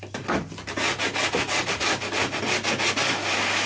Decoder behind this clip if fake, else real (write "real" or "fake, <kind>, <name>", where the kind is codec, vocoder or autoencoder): real